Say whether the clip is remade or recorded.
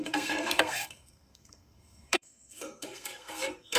remade